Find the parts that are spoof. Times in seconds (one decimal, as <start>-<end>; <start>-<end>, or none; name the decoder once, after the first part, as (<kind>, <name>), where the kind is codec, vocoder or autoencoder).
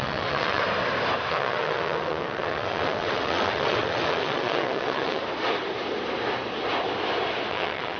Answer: 0.0-0.6 (vocoder, WaveNeXt); 1.3-5.2; 7.5-8.0